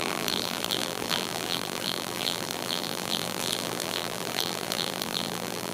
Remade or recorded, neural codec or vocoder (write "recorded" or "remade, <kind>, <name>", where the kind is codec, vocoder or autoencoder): remade, vocoder, BigVGAN v2